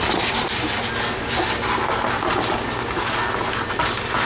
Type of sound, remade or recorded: recorded